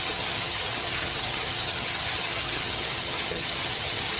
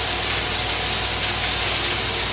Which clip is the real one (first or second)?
second